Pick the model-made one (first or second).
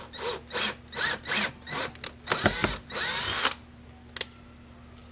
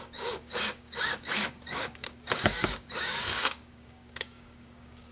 second